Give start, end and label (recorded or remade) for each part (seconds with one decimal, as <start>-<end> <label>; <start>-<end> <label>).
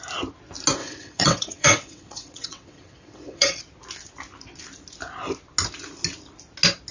0.0-0.8 recorded; 0.8-3.6 remade; 3.6-6.9 recorded